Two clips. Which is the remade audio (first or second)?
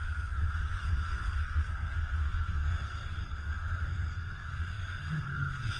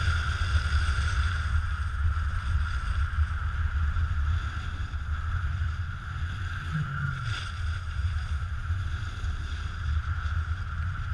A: first